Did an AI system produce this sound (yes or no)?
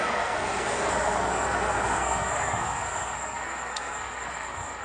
yes